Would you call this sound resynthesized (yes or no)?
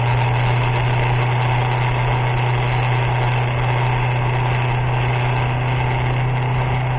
no